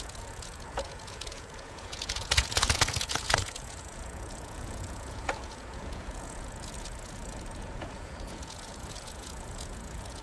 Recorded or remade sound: remade